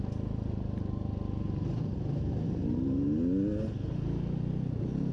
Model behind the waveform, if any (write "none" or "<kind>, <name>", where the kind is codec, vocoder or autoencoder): none